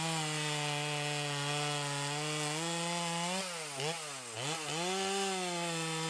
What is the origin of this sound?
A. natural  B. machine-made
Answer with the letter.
A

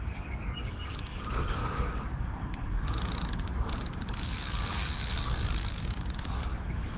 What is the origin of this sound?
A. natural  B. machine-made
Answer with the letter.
B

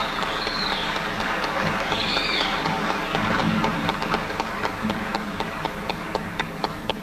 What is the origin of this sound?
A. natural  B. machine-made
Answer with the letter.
B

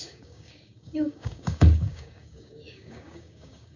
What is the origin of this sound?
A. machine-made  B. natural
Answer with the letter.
A